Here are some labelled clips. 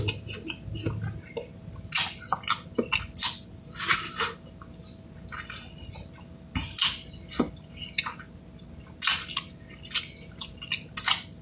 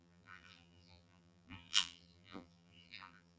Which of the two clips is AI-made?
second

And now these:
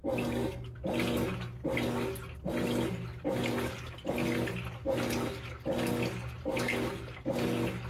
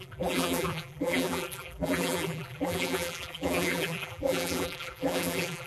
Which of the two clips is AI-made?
second